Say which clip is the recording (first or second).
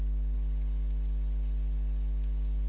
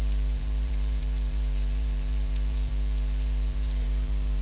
first